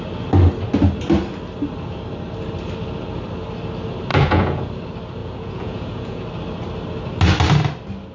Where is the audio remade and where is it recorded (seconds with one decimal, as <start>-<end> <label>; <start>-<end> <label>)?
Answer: 0.0-4.1 recorded; 4.1-4.7 remade; 4.7-5.2 recorded; 5.2-6.2 remade; 6.2-8.1 recorded